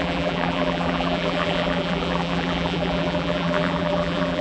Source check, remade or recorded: remade